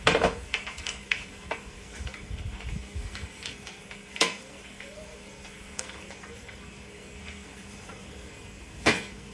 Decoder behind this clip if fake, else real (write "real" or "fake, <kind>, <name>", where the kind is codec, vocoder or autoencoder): fake, codec, SNAC